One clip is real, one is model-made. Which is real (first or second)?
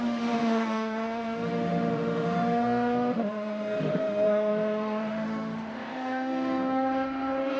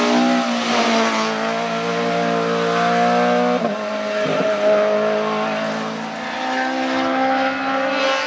second